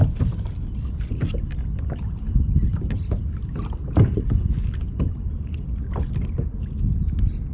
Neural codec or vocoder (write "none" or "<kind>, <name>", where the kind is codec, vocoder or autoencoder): none